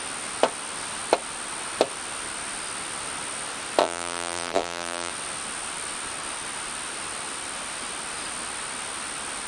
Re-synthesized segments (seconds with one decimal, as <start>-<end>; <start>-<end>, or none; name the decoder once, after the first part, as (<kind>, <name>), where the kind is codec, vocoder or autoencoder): 3.8-5.1 (vocoder, BigVGAN v2)